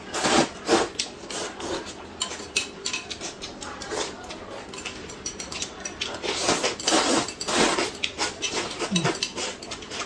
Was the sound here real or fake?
fake